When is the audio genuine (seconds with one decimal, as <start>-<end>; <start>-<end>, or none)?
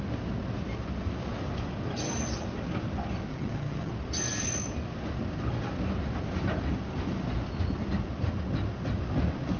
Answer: 0.0-3.3; 3.9-9.6